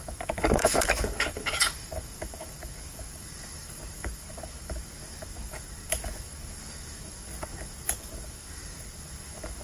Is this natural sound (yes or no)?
no